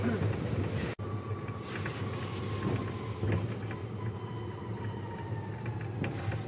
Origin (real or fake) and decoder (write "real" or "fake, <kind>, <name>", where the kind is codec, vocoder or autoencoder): real